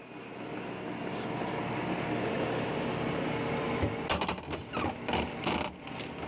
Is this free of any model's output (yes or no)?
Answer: yes